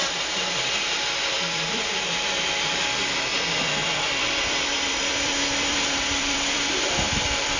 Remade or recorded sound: remade